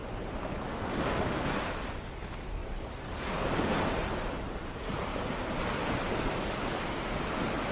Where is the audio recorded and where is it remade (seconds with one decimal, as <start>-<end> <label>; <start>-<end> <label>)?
0.0-2.6 recorded; 2.6-5.5 remade; 5.5-7.7 recorded